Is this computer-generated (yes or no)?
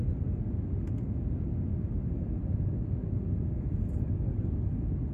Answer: no